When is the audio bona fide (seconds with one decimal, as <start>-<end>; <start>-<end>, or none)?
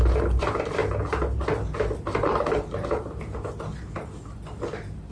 0.0-5.1